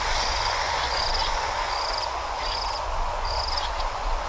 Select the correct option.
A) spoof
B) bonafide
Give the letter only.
A